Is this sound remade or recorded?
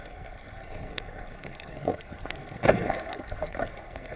remade